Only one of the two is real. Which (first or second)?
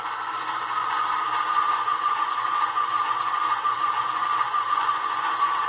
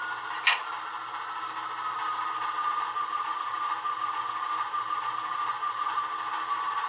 second